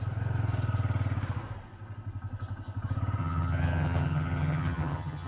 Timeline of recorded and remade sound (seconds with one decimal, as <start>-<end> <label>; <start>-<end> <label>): 0.0-3.2 recorded; 3.2-5.3 remade

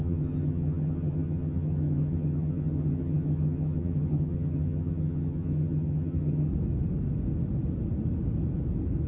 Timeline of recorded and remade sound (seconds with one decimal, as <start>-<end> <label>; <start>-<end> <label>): 0.0-6.5 remade; 6.5-9.1 recorded

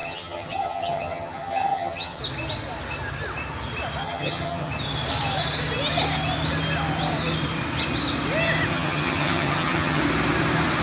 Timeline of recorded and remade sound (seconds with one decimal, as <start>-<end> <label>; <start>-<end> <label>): 0.0-2.2 remade; 2.2-4.0 recorded; 4.0-4.7 remade; 4.7-8.7 recorded; 8.7-10.0 remade; 10.0-10.8 recorded